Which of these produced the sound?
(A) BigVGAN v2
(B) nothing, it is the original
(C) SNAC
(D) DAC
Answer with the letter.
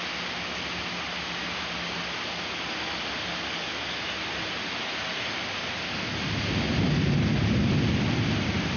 B